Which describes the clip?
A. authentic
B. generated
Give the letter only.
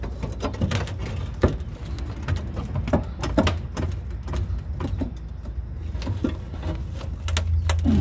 A